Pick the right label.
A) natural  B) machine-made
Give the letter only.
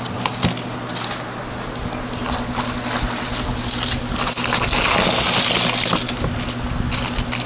A